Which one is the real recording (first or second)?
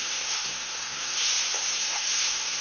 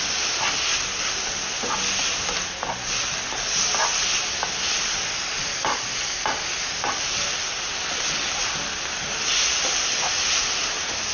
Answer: second